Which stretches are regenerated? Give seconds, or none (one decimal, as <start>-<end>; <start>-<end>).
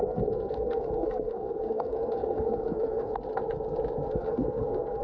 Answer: 0.0-3.1; 4.1-5.0